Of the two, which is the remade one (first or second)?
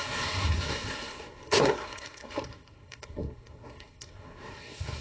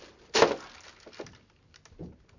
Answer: first